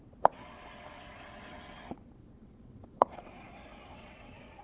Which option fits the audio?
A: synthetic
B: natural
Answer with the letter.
A